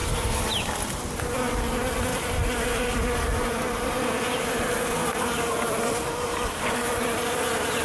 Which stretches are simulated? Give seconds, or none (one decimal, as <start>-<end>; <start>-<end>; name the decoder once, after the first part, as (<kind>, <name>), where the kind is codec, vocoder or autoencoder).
2.1-6.6 (vocoder, BigVGAN v2)